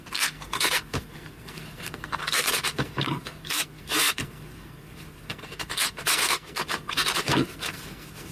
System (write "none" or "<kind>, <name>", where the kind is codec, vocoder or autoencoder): codec, SNAC